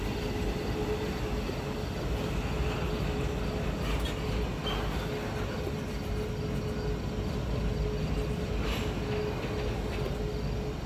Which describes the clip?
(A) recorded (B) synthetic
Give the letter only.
A